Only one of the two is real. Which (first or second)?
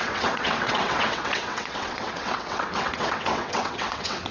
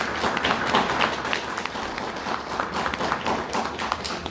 second